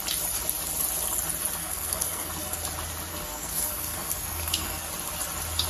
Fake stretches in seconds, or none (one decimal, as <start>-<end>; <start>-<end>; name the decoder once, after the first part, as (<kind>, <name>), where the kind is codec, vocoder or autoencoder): 1.6-2.6 (codec, SNAC); 3.1-4.9